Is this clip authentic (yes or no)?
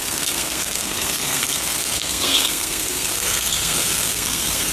no